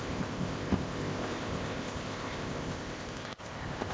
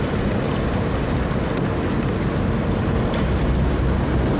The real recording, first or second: second